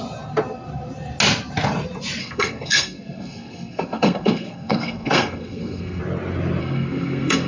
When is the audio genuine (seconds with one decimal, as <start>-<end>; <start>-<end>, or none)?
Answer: 0.0-2.2; 6.0-6.6